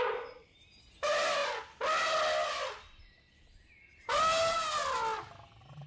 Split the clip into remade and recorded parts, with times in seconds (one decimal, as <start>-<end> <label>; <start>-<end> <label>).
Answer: 0.0-5.9 recorded